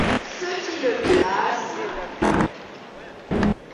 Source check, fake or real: real